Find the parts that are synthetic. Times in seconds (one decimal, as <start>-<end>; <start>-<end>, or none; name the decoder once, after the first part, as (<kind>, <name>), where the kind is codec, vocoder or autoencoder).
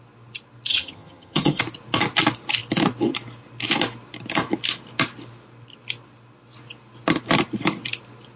0.7-1.6 (vocoder, HiFi-GAN)